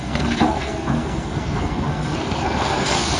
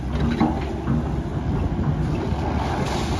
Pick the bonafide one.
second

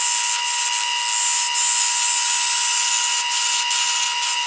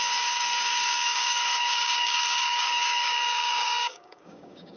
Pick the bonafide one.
first